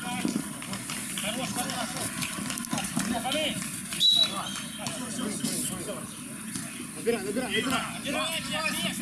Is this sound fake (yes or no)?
no